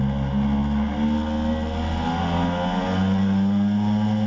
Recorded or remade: recorded